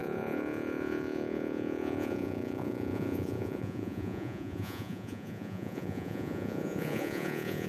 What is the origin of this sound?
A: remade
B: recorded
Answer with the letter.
A